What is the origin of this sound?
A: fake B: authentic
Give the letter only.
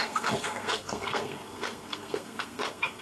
A